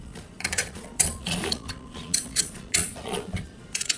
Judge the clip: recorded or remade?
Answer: remade